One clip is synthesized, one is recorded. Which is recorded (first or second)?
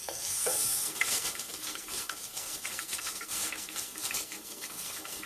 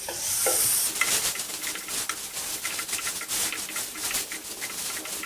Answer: second